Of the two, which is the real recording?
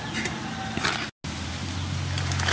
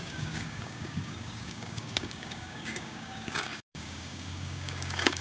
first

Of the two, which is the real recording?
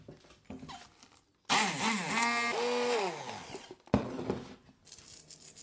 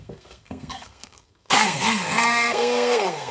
first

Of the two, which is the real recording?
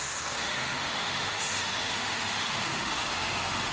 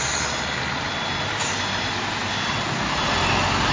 second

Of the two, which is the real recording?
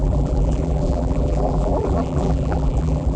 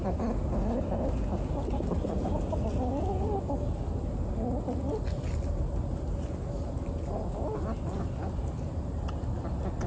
second